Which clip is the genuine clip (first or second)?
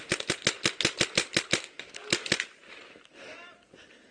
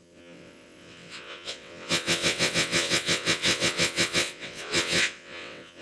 first